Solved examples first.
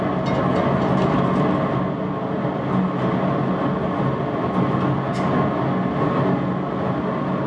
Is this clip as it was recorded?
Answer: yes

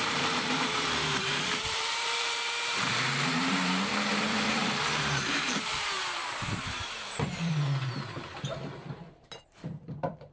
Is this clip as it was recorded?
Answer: no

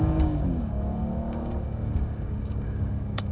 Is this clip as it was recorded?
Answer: no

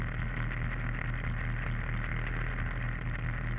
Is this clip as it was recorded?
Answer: yes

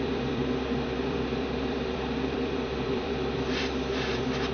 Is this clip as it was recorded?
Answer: no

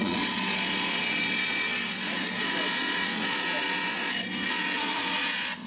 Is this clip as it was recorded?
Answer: no